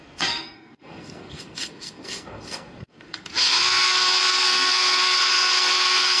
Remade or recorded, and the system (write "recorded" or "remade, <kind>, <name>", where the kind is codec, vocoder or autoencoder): remade, codec, SNAC